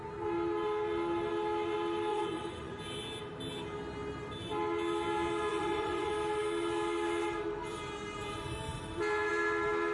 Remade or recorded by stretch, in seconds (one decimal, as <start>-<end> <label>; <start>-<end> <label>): 0.0-2.1 recorded; 2.1-2.8 remade; 2.8-5.5 recorded; 5.5-6.1 remade; 6.1-9.9 recorded

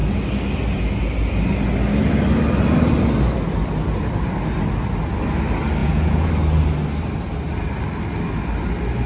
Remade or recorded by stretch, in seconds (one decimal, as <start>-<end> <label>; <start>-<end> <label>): 0.0-5.8 recorded; 5.8-6.3 remade; 6.3-9.1 recorded